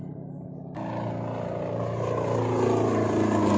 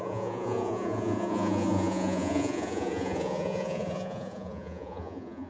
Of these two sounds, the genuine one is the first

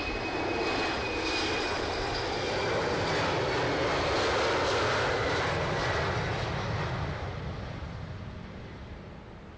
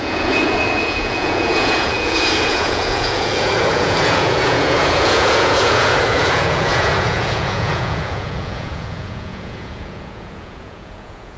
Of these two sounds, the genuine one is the first